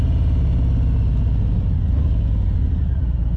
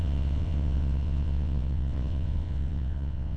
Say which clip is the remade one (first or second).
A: second